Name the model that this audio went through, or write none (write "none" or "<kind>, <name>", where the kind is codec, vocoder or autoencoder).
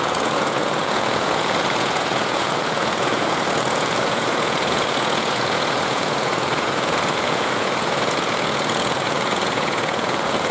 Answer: vocoder, Vocos